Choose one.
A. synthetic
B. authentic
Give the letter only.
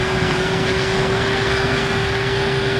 A